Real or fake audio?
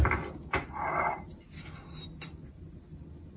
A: real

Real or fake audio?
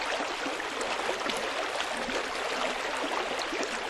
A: real